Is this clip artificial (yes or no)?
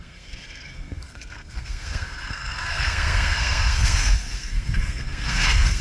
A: yes